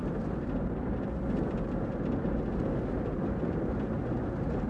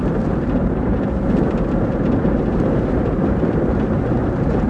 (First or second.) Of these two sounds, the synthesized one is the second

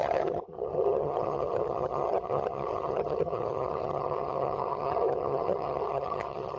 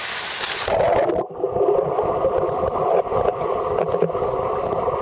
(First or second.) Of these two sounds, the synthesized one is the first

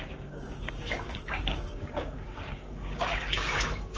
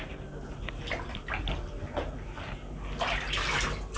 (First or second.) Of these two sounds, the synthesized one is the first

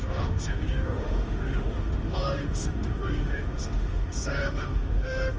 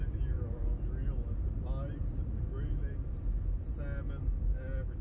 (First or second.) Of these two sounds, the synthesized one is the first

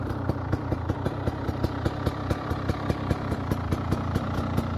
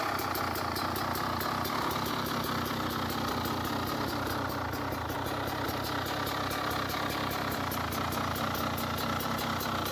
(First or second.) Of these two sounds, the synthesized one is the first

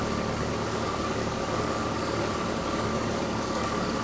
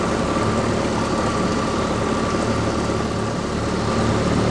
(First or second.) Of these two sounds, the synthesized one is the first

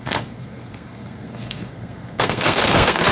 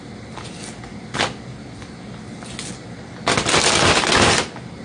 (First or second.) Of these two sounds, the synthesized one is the first